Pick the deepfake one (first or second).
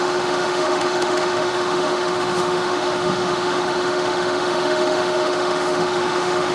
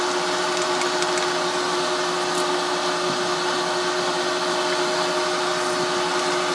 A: first